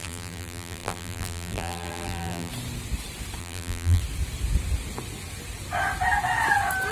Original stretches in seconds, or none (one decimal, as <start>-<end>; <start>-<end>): 2.5-3.4; 4.0-6.9